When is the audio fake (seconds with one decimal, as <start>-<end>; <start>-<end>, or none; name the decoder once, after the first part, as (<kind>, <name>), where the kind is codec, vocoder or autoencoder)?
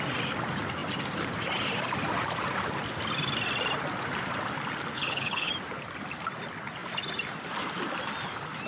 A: 4.9-5.5 (codec, HILCodec)